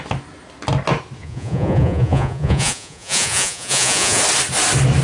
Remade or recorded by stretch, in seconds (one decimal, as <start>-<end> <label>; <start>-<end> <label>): 0.0-1.2 recorded; 1.2-4.2 remade; 4.2-5.0 recorded

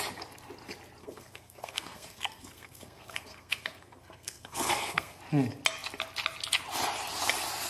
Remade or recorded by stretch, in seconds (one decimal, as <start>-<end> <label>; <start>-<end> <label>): 0.0-1.0 recorded; 1.0-5.2 remade; 5.2-7.7 recorded

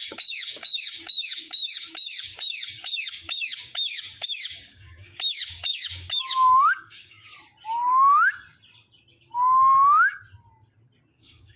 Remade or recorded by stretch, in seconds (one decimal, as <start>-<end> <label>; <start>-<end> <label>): 0.0-7.3 remade; 7.3-11.1 recorded; 11.1-11.6 remade

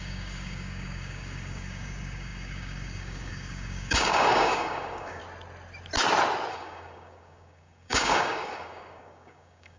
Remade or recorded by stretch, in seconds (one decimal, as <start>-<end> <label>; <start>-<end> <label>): 0.0-5.2 remade; 5.2-6.5 recorded; 6.5-9.8 remade

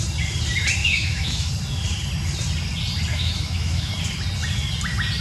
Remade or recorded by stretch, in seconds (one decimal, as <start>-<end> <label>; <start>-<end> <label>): 0.0-0.8 recorded; 0.8-1.5 remade; 1.5-3.1 recorded; 3.1-3.9 remade; 3.9-5.2 recorded